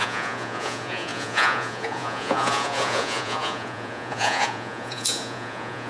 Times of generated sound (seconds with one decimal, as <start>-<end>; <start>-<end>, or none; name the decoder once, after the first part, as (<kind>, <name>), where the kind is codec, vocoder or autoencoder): 0.0-5.9 (vocoder, Vocos)